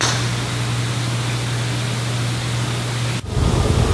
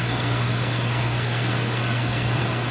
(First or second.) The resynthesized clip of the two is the second